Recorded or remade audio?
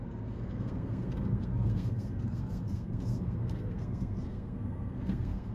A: remade